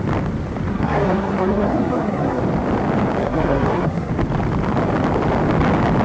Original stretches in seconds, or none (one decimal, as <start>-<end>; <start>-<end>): 0.0-0.7; 2.4-3.2; 4.1-6.0